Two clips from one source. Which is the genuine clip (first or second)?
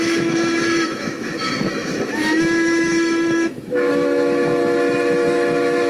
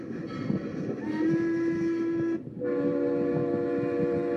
second